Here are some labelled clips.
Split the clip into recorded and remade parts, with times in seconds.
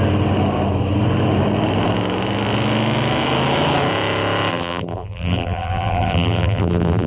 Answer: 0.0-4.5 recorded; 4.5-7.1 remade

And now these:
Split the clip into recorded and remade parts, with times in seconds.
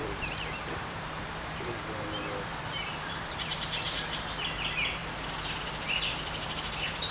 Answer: 0.0-3.9 remade; 3.9-7.1 recorded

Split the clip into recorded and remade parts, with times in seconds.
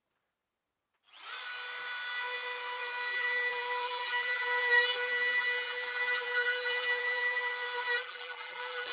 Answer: 0.0-3.1 recorded; 3.1-7.5 remade; 7.5-7.9 recorded; 7.9-8.9 remade